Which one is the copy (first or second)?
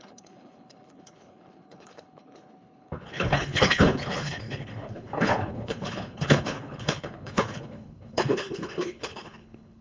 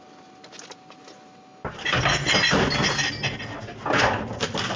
first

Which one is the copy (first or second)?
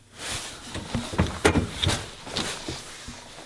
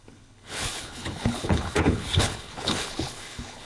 second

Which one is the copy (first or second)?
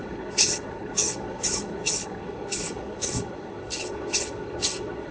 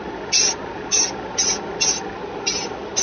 first